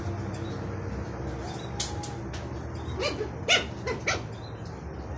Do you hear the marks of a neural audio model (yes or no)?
no